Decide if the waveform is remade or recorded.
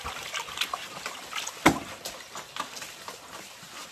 recorded